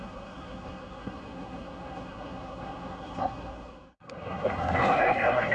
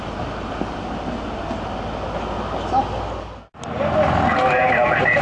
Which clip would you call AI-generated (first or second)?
first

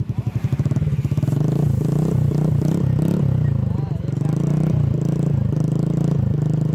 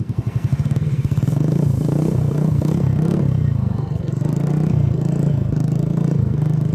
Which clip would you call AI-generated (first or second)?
second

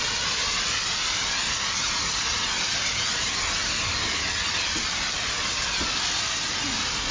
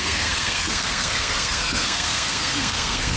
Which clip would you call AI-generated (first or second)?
second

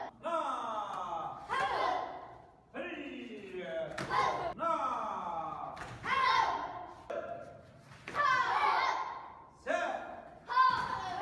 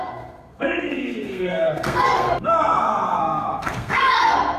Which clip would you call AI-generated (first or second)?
second